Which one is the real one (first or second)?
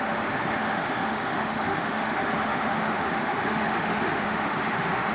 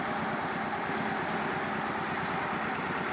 second